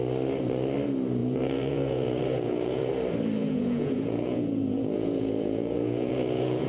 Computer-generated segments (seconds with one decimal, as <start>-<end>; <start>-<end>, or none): 1.2-2.9; 3.4-6.7